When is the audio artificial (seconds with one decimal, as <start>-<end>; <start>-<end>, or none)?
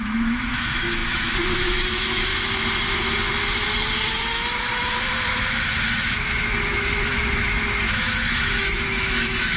0.0-2.3; 4.1-4.9; 6.0-9.6